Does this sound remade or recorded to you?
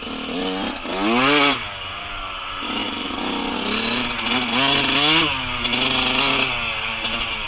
recorded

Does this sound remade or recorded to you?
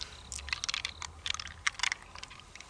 recorded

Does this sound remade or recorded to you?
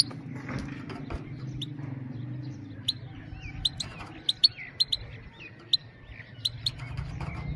recorded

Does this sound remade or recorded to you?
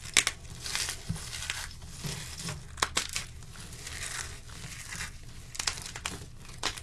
recorded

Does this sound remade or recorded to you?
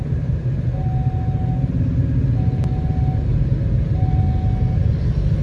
recorded